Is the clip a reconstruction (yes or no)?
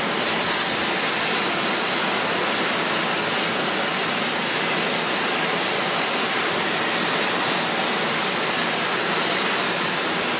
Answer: no